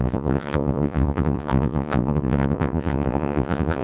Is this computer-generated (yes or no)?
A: yes